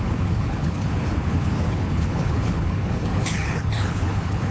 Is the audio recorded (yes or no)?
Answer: no